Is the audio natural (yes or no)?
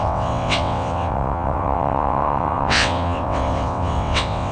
no